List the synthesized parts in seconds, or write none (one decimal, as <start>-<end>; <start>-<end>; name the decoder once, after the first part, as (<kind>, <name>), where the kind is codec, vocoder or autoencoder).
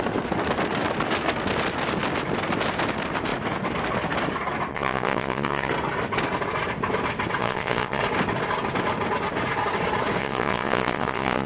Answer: 4.7-5.7 (vocoder, Vocos); 7.4-8.0; 10.2-11.5